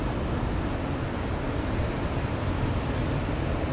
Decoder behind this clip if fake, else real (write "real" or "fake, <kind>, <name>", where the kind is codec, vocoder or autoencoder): real